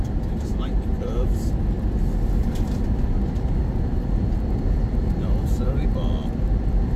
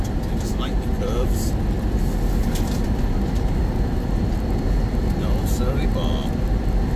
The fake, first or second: first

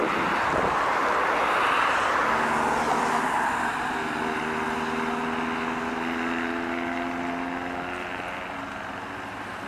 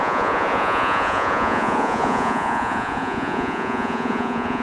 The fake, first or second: second